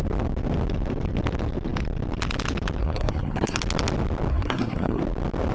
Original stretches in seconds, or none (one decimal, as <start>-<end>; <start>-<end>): 0.0-2.8; 3.6-4.3; 5.0-5.5